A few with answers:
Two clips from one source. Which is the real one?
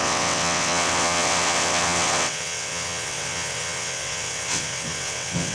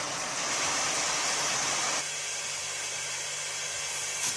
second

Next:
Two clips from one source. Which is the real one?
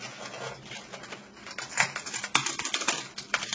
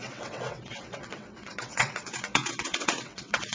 first